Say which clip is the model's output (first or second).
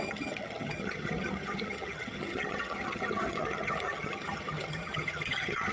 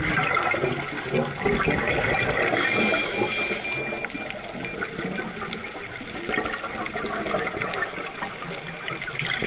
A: first